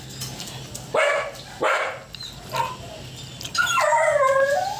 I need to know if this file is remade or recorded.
recorded